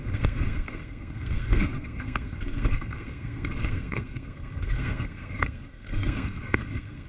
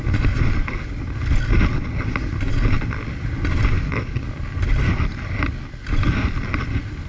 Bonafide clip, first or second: second